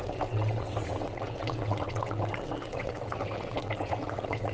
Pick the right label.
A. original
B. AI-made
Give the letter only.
B